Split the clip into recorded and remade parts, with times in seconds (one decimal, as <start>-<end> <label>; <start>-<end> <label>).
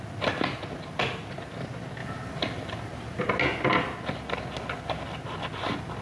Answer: 0.0-6.0 recorded